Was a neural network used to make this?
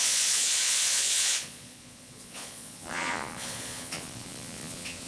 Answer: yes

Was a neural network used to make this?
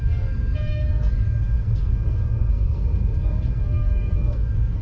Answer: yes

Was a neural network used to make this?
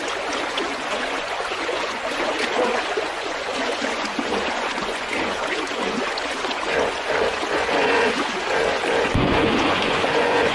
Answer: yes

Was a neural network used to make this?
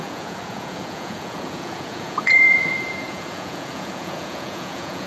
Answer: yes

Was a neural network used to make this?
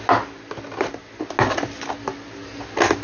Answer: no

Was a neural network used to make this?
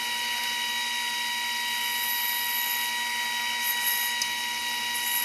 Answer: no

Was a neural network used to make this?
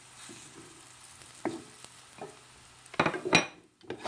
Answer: no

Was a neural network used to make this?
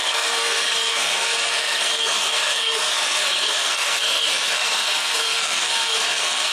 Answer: yes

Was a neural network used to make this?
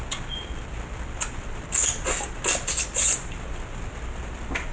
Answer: no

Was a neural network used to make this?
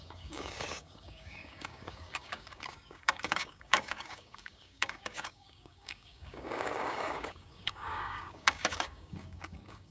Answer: yes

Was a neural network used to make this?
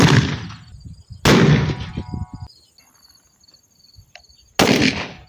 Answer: no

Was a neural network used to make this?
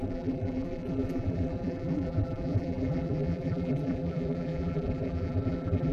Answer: yes